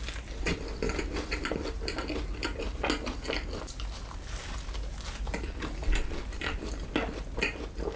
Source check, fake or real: real